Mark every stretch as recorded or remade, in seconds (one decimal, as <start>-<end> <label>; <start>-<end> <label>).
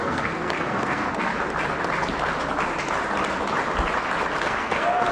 0.0-1.3 remade; 1.3-4.4 recorded; 4.4-5.1 remade